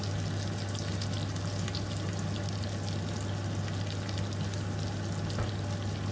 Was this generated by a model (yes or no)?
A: no